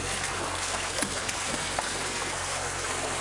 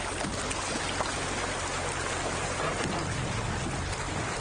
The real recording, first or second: second